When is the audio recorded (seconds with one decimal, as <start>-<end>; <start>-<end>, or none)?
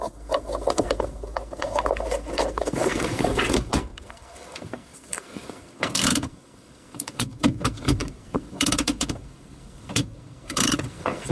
none